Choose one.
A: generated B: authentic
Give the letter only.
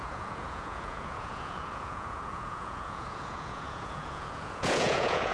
A